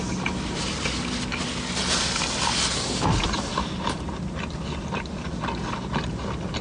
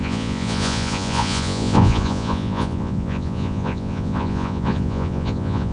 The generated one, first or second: second